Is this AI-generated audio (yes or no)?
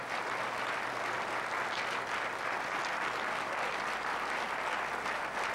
no